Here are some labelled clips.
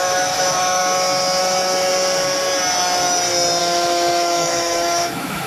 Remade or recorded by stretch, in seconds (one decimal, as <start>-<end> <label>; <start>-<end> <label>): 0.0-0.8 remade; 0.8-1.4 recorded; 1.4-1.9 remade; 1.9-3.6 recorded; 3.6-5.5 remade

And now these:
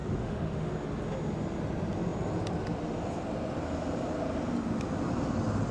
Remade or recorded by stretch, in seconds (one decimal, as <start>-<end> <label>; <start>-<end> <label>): 0.0-0.7 remade; 0.7-5.7 recorded

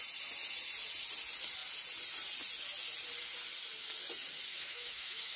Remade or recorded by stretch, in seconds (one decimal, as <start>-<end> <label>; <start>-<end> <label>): 0.0-4.5 recorded; 4.5-5.4 remade